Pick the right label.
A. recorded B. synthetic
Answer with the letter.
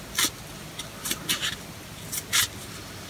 A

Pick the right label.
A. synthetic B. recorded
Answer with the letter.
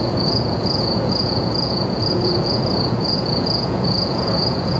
A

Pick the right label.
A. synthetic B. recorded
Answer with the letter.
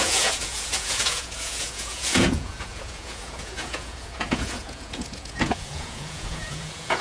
A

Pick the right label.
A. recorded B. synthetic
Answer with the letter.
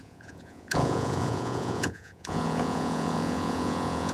B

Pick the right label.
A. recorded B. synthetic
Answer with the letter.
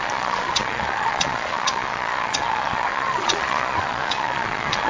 B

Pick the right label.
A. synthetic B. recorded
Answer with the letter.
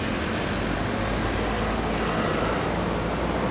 B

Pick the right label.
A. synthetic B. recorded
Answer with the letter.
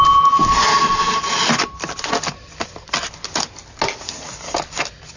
B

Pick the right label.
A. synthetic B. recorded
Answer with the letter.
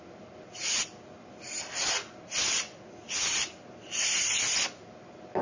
B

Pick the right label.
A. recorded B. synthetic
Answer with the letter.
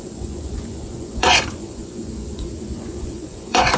B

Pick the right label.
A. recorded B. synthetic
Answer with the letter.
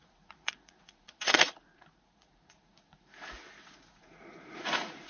B